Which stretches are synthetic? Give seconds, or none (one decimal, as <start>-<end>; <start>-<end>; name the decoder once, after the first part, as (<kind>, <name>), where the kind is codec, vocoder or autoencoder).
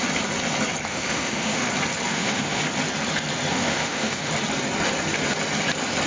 0.9-1.7 (autoencoder, DAC-VAE); 2.1-2.6; 3.5-4.3